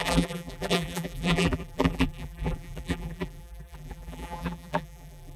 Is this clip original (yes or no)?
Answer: no